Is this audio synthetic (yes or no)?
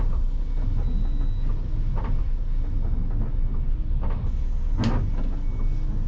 no